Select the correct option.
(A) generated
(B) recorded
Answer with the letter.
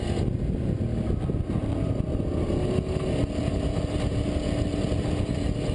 B